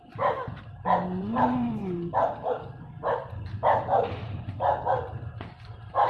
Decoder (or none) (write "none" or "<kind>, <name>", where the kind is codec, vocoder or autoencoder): vocoder, BigVGAN v2